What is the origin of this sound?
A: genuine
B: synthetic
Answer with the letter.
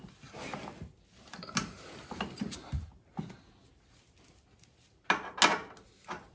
A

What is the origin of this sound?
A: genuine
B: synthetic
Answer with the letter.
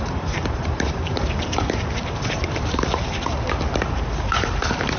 B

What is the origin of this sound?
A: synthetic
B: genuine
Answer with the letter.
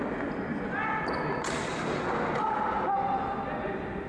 B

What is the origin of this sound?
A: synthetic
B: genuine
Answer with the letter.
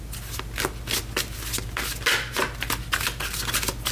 B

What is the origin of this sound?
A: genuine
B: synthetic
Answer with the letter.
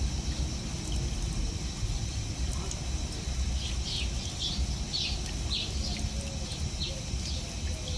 A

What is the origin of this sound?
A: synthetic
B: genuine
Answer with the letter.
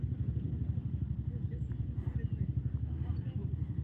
B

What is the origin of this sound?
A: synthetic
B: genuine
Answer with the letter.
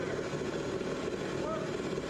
B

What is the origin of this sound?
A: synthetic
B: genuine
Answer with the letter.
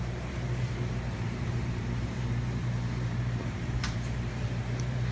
A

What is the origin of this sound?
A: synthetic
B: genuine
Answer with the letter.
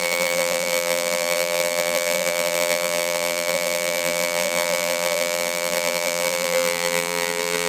A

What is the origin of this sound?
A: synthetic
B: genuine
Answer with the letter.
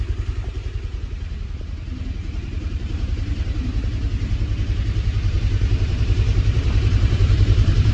A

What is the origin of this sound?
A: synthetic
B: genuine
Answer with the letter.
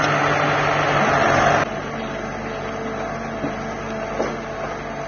B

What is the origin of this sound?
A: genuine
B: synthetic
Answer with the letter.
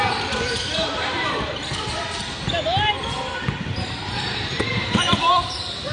B